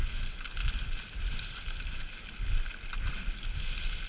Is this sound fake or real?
real